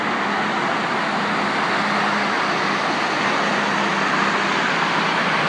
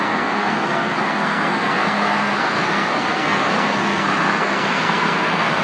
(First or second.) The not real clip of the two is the second